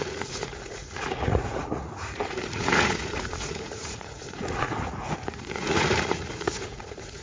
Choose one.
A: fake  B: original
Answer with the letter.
A